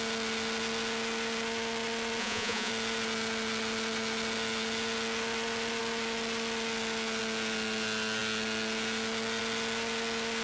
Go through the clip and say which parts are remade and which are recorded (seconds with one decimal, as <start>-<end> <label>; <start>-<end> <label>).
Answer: 0.0-2.2 recorded; 2.2-2.7 remade; 2.7-10.4 recorded